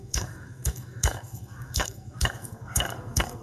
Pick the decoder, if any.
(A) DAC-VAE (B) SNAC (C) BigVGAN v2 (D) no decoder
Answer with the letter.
B